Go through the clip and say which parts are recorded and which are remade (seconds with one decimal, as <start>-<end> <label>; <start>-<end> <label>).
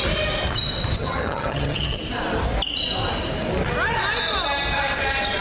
0.0-1.0 recorded; 1.0-2.0 remade; 2.0-5.4 recorded